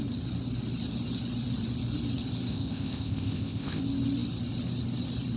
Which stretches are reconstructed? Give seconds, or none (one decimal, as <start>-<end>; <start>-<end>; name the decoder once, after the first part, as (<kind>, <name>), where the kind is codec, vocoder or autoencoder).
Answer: 2.5-3.8 (codec, ZipCodec)